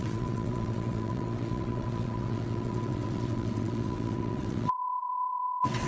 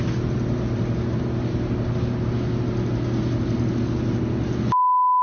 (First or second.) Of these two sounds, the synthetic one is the first